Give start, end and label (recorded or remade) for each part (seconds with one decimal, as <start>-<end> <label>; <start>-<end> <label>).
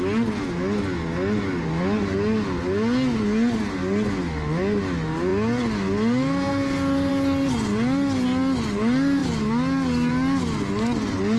0.0-11.4 recorded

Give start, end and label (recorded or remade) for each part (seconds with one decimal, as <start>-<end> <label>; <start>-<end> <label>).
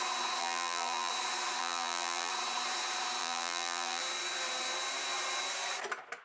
0.0-0.4 recorded; 0.4-1.1 remade; 1.1-1.6 recorded; 1.6-2.3 remade; 2.3-3.2 recorded; 3.2-4.0 remade; 4.0-6.2 recorded